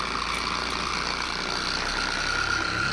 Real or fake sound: real